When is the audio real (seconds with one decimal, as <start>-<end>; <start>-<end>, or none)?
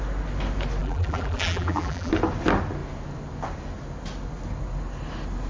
0.0-0.8; 2.1-5.5